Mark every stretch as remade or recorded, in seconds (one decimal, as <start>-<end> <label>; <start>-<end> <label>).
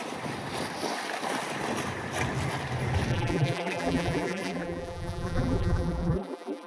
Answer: 0.0-3.1 recorded; 3.1-6.7 remade